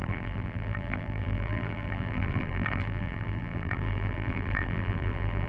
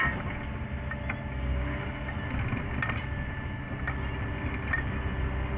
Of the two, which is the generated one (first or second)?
first